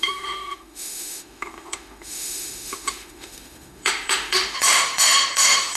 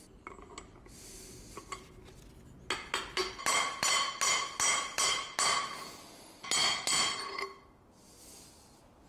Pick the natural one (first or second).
second